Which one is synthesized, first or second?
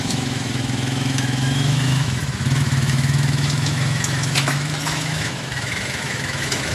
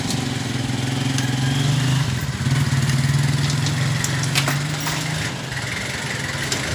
first